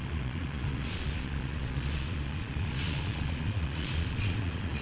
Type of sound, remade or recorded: remade